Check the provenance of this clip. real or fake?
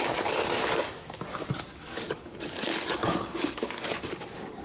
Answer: fake